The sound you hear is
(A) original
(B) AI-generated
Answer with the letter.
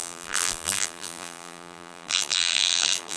B